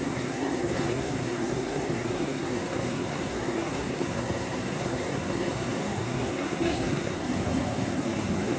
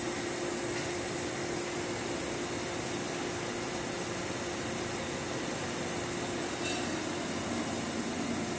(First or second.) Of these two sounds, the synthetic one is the first